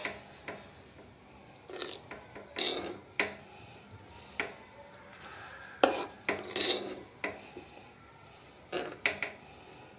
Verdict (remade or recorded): recorded